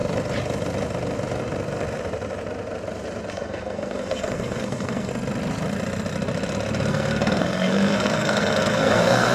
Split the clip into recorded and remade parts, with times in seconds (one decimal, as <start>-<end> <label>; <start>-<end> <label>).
0.0-3.3 recorded; 3.3-5.1 remade; 5.1-6.9 recorded; 6.9-9.3 remade